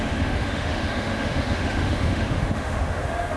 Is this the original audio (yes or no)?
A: no